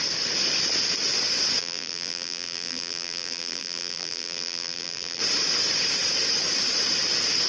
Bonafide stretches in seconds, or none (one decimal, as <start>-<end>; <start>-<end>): 0.0-1.6; 5.2-7.5